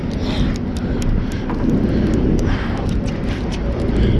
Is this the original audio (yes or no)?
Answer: yes